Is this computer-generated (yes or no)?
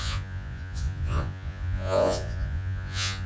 yes